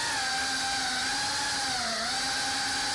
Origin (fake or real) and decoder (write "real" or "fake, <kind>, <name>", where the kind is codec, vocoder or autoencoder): real